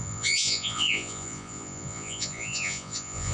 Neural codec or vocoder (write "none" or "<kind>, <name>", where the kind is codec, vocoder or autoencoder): vocoder, Vocos